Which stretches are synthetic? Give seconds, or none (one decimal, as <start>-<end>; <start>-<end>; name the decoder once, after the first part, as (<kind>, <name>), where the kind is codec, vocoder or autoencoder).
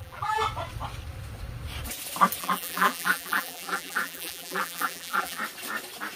0.0-0.4 (vocoder, BigVGAN v2); 2.4-5.4